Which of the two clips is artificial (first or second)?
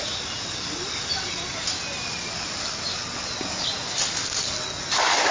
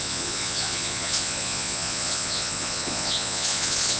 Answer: second